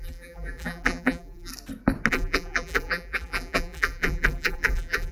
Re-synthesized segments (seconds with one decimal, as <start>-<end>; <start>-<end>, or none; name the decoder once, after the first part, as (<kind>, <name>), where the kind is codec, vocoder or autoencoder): 0.0-1.5 (vocoder, BigVGAN v2); 2.1-5.1